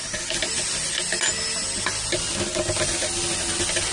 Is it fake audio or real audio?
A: real